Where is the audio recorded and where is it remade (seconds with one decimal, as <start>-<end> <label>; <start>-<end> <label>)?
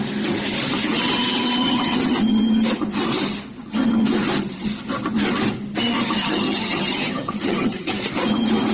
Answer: 0.0-1.6 recorded; 1.6-2.2 remade; 2.2-6.2 recorded; 6.2-7.9 remade; 7.9-8.7 recorded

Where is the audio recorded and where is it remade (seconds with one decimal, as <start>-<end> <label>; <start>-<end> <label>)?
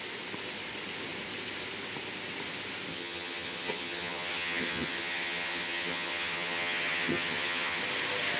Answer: 0.0-2.9 recorded; 2.9-7.8 remade; 7.8-8.4 recorded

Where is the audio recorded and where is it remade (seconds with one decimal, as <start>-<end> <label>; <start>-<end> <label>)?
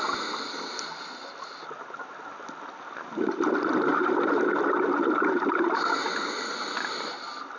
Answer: 0.0-7.6 recorded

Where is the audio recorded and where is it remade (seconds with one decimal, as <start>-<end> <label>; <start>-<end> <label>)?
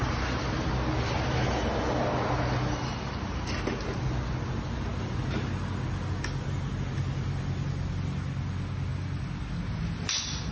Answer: 0.0-10.5 recorded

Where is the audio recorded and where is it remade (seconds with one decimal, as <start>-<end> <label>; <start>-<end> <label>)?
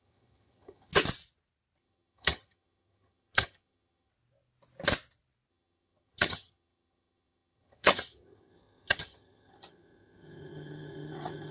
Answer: 0.0-0.9 remade; 0.9-1.8 recorded; 1.8-4.1 remade; 4.1-5.5 recorded; 5.5-11.5 remade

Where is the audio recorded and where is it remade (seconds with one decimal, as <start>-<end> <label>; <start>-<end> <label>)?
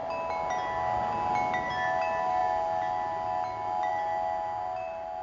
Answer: 0.0-5.2 recorded